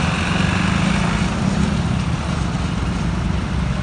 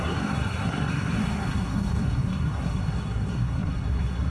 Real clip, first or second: first